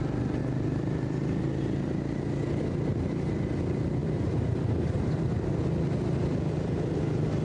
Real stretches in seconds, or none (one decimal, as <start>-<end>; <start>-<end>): 0.0-4.0; 4.6-7.4

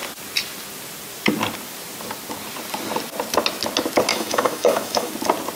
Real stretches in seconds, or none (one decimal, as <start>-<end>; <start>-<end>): 0.0-4.1; 5.1-5.6

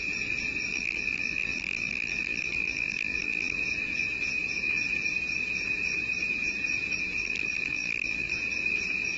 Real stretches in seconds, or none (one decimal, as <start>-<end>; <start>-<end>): 0.0-0.7; 3.6-7.2; 8.3-9.2

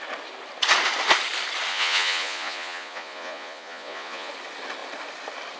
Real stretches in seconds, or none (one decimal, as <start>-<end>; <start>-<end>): 0.0-1.7; 4.3-5.6

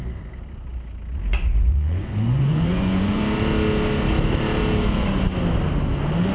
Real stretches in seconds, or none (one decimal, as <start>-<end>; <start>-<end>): 0.0-1.3; 3.2-6.3

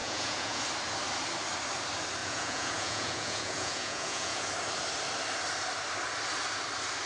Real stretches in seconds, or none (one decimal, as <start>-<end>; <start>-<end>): 0.6-2.2; 4.5-7.1

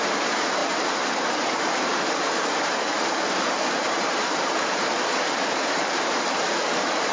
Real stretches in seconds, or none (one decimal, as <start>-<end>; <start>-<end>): none